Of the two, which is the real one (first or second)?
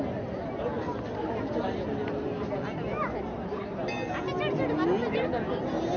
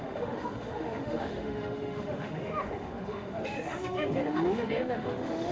first